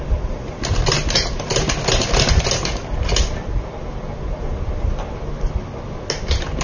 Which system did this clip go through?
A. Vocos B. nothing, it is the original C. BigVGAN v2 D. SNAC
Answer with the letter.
B